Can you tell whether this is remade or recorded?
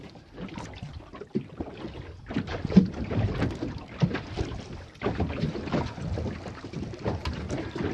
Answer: recorded